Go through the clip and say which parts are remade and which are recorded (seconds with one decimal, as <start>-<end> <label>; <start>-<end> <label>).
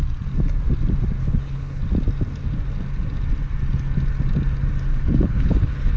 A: 0.0-1.2 recorded; 1.2-1.8 remade; 1.8-4.9 recorded; 4.9-6.0 remade